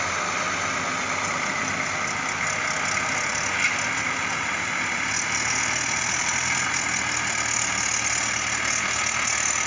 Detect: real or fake real